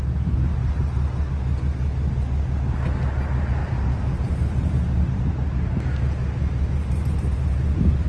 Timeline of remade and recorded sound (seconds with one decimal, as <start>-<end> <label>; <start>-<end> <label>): 0.0-3.6 recorded; 3.6-5.2 remade; 5.2-6.4 recorded; 6.4-8.1 remade